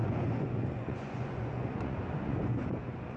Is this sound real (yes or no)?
no